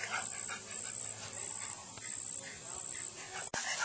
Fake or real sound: fake